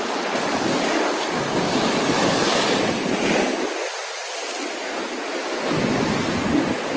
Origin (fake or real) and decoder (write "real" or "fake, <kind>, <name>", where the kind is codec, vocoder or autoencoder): real